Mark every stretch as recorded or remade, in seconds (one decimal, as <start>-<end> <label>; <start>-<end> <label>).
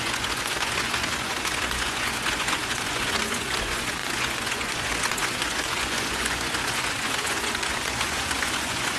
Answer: 0.0-9.0 remade